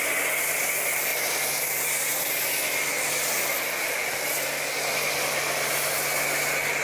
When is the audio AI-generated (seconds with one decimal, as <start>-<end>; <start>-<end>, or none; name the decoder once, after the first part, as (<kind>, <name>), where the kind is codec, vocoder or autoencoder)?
none